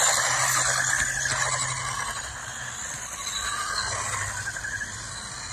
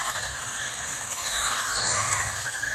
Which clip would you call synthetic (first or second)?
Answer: second